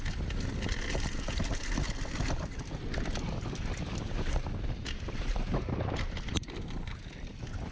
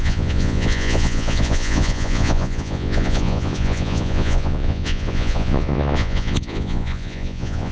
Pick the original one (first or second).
first